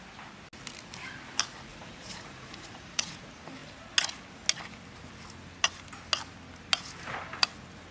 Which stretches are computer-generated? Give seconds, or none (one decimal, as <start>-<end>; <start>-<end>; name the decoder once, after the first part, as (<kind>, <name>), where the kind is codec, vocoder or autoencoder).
1.7-3.2 (vocoder, Vocos)

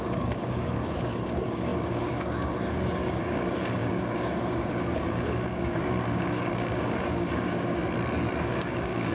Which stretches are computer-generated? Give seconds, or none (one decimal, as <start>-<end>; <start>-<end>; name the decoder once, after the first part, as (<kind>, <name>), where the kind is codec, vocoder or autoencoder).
0.0-7.8 (codec, DAC); 8.4-9.1

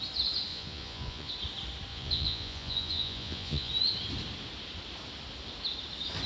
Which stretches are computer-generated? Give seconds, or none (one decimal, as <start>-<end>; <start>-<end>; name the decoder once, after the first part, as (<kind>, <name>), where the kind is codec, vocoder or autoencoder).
0.5-1.3 (vocoder, Vocos); 1.9-3.7

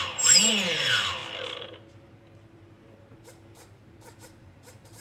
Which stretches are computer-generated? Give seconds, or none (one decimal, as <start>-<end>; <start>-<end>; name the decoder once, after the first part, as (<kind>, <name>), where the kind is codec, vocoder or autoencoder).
0.0-1.2 (vocoder, BigVGAN v2); 1.9-5.0

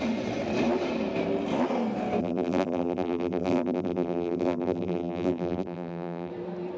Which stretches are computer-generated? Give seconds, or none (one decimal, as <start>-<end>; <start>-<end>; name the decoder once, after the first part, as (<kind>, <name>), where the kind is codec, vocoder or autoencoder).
2.2-6.3 (vocoder, BigVGAN v2)

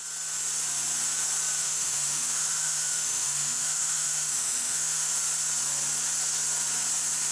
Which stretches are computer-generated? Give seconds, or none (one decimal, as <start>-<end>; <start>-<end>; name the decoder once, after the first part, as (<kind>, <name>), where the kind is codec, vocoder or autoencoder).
1.6-5.1 (autoencoder, DAC-VAE)